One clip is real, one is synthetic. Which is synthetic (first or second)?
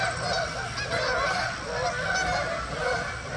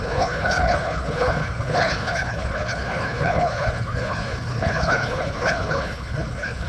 second